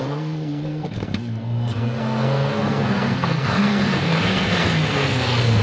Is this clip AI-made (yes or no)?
yes